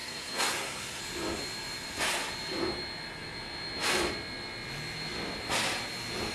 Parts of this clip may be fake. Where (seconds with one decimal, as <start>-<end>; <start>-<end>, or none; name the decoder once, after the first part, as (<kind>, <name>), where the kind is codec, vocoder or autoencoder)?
0.0-1.0 (codec, SNAC)

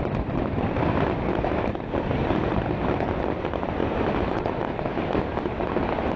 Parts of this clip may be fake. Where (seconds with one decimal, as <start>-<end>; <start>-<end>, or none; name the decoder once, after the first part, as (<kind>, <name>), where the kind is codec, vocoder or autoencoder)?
0.0-6.2 (vocoder, BigVGAN v2)